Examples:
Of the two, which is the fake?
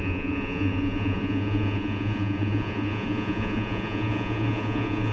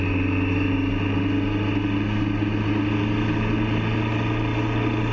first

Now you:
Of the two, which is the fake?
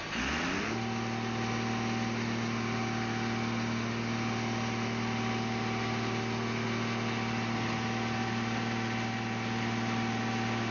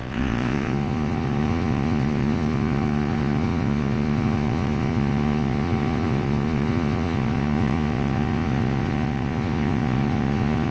second